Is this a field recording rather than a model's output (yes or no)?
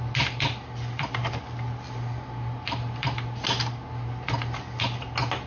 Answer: yes